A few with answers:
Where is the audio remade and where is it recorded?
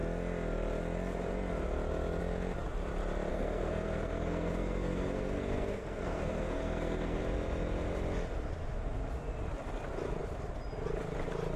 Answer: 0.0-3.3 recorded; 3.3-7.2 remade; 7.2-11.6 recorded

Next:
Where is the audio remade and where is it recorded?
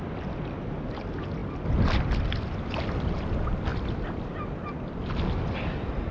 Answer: 0.0-6.1 recorded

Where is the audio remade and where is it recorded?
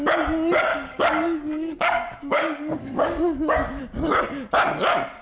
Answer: 0.0-0.7 recorded; 0.7-3.8 remade; 3.8-5.2 recorded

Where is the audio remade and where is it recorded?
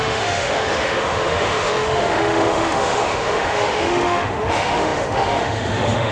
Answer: 0.0-6.1 remade